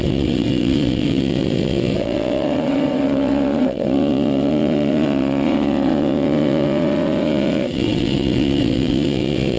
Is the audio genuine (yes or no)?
no